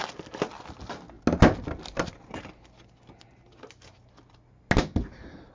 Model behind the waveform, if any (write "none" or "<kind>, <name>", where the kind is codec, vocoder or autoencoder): none